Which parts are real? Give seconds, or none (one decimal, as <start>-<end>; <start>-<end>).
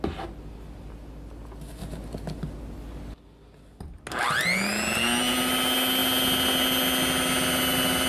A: 0.0-8.1